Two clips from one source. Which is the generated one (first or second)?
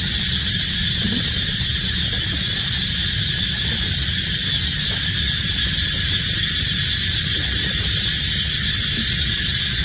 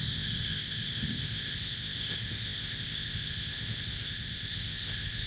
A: second